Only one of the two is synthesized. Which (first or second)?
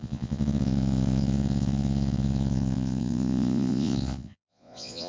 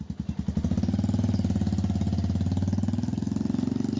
first